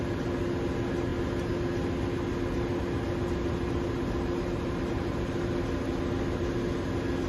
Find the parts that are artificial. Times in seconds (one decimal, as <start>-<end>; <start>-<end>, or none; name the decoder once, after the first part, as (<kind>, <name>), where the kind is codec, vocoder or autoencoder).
none